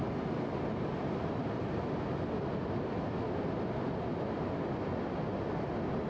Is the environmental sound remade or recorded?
recorded